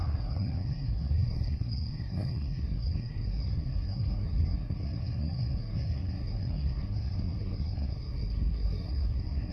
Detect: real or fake fake